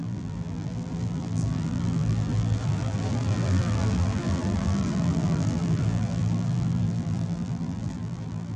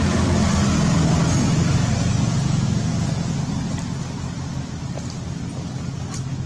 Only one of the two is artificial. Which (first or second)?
first